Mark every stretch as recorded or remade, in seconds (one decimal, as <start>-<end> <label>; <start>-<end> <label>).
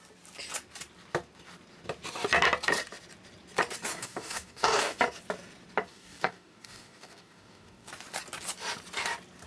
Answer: 0.0-3.9 recorded; 3.9-5.0 remade; 5.0-5.9 recorded; 5.9-7.9 remade; 7.9-9.5 recorded